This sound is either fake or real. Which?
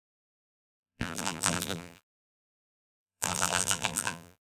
fake